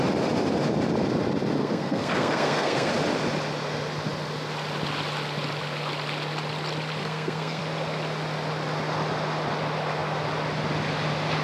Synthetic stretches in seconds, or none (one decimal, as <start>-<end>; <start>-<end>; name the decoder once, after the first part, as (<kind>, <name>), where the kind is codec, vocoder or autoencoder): 1.6-2.9 (codec, SNAC); 7.0-7.6